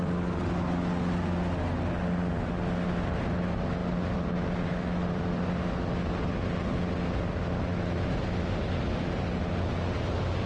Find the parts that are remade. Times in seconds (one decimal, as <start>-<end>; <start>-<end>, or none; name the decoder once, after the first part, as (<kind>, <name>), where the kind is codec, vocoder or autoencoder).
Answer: none